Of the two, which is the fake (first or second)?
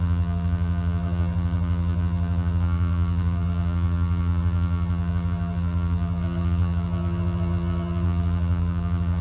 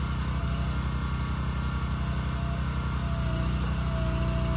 first